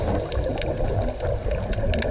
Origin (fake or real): real